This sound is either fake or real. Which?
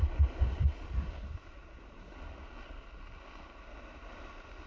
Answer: real